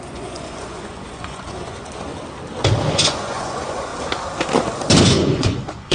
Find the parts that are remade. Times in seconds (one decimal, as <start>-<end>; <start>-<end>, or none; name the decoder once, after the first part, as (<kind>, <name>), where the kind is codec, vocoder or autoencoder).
0.0-2.1 (vocoder, Vocos); 2.9-3.9; 5.1-5.9